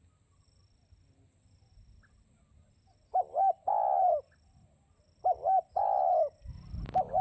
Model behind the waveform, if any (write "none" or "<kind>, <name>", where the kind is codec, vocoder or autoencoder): none